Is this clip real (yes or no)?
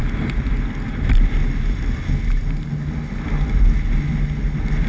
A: yes